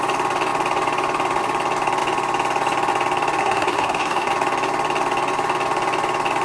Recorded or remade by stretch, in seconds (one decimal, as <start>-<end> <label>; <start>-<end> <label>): 0.0-3.4 recorded; 3.4-4.3 remade; 4.3-6.4 recorded